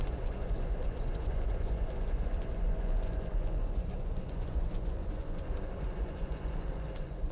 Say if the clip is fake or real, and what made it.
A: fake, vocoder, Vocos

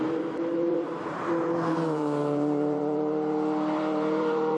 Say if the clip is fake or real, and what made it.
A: fake, vocoder, BigVGAN v2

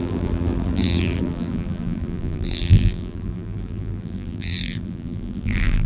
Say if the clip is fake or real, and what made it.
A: fake, vocoder, BigVGAN v2